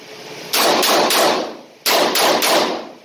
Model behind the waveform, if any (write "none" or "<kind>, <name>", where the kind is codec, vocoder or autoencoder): none